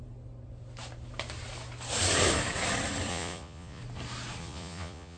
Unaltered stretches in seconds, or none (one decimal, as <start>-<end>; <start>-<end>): 0.0-3.1; 3.8-4.4